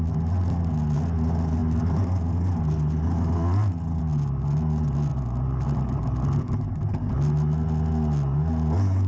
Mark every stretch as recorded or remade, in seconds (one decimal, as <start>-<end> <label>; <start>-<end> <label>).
0.0-9.1 recorded